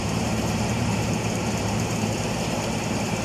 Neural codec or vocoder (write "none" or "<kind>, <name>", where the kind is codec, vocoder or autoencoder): vocoder, BigVGAN v2